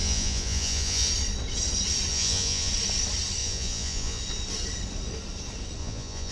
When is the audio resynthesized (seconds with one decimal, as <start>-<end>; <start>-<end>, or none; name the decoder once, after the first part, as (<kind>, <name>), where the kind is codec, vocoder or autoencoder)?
0.0-1.1 (vocoder, Vocos); 2.1-2.7; 3.4-4.2; 5.8-6.3